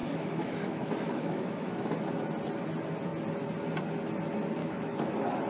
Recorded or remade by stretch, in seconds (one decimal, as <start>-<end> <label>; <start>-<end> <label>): 0.0-1.9 remade; 1.9-4.6 recorded; 4.6-5.1 remade; 5.1-5.5 recorded